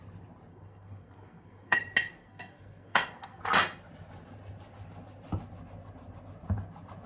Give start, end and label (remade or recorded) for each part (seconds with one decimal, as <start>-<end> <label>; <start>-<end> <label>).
0.0-0.5 recorded; 0.5-1.8 remade; 1.8-2.2 recorded; 2.2-3.4 remade; 3.4-7.1 recorded